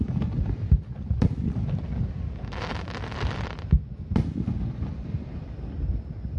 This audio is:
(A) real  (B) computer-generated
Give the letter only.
A